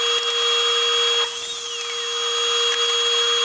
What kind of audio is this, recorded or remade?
recorded